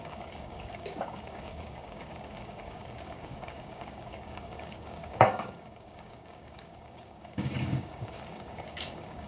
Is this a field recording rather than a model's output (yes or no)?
no